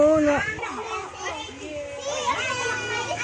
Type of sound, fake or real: real